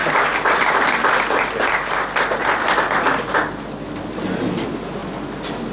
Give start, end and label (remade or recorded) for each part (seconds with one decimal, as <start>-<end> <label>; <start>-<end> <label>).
0.0-5.7 recorded